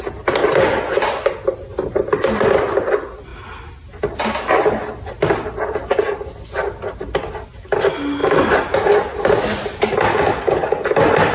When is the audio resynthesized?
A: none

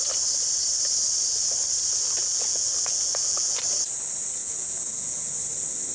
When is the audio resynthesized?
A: 2.2-3.6; 4.4-5.3

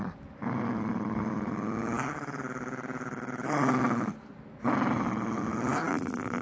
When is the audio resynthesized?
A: 5.9-6.4

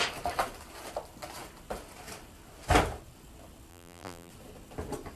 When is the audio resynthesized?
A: 3.7-4.3

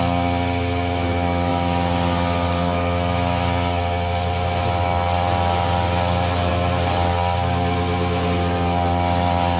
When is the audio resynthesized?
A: none

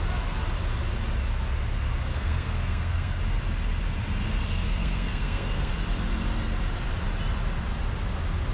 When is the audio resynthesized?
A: 2.1-3.2; 4.8-5.7

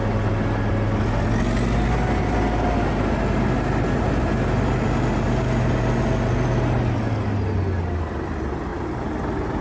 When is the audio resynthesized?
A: none